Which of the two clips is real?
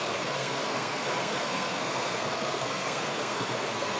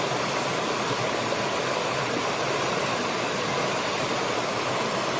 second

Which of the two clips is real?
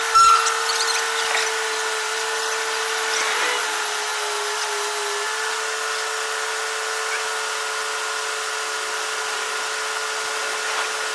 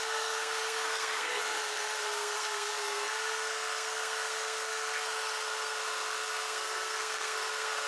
first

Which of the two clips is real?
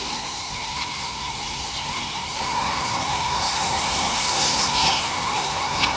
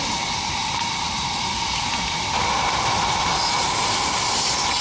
second